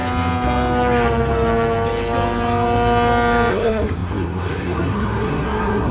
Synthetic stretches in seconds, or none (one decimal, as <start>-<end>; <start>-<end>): 3.5-5.9